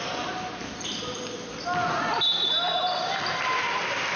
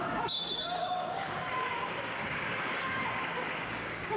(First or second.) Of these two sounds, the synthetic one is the second